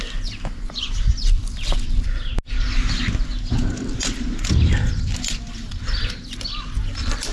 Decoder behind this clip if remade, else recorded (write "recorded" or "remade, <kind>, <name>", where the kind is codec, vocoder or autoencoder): recorded